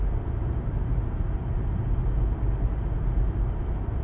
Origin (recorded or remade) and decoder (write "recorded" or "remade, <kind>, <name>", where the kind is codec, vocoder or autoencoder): recorded